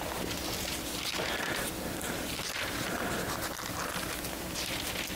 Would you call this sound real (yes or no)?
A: yes